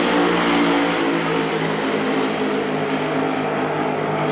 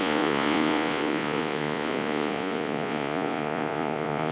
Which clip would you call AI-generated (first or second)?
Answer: second